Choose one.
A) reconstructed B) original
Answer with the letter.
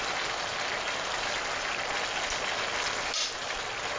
B